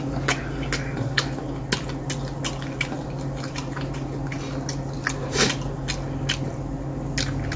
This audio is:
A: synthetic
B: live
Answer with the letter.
B